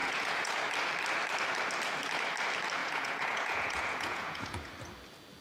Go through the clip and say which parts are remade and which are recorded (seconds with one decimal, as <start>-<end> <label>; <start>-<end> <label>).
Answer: 0.0-0.6 remade; 0.6-2.8 recorded; 2.8-4.7 remade; 4.7-5.4 recorded